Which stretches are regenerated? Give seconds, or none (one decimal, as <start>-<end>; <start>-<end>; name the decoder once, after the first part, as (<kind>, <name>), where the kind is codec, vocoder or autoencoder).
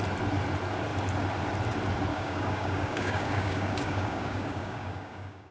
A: 2.1-5.5 (codec, DAC)